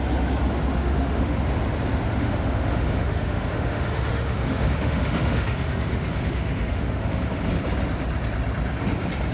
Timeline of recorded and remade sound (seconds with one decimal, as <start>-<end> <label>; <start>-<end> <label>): 0.0-0.7 recorded; 0.7-1.4 remade; 1.4-2.1 recorded; 2.1-7.2 remade; 7.2-9.3 recorded